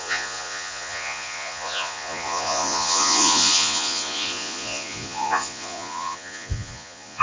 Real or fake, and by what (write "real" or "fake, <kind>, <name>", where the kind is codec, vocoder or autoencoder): fake, vocoder, Vocos